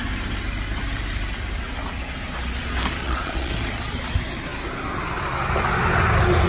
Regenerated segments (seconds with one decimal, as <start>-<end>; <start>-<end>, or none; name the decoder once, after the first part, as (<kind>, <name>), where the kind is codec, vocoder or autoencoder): 3.0-3.5 (vocoder, Vocos)